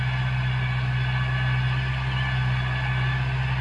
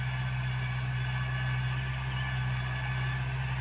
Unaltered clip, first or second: first